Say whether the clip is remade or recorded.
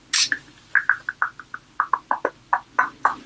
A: recorded